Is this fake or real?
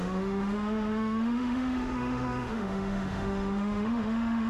fake